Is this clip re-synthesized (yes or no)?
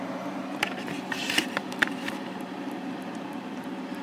yes